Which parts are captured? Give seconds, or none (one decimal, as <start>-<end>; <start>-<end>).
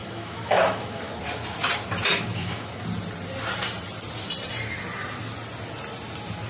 1.2-2.1; 2.8-6.5